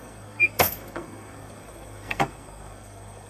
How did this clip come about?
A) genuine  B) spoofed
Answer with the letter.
B